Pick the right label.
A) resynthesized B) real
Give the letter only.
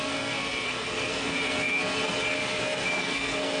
A